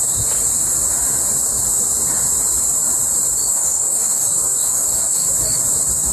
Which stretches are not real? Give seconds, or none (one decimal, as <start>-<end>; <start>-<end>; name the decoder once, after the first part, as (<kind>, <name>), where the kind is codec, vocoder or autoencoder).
3.5-5.3 (codec, DAC)